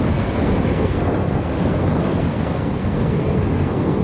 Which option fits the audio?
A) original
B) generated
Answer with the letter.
B